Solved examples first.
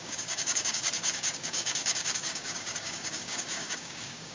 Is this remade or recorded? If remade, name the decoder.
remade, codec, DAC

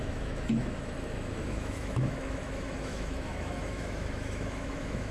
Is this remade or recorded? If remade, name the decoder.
remade, autoencoder, DAC-VAE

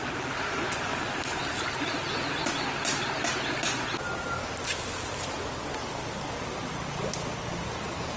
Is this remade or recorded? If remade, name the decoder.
recorded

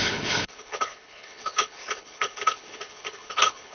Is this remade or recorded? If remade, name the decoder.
remade, codec, HILCodec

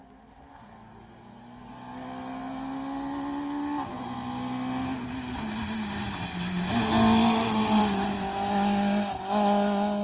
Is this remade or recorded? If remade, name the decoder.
recorded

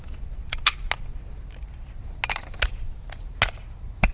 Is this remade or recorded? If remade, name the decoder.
recorded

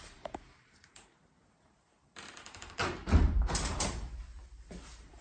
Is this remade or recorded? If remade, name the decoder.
remade, vocoder, BigVGAN v2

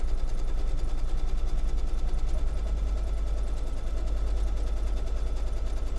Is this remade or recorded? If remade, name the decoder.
recorded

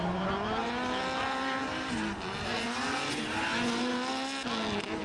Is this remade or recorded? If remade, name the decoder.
recorded